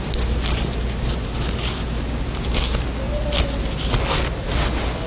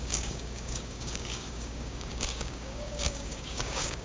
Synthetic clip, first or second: second